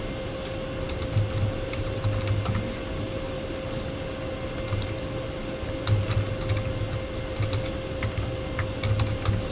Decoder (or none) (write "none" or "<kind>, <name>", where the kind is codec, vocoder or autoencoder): none